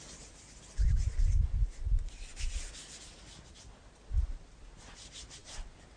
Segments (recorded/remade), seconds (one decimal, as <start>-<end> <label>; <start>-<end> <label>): 0.0-6.0 recorded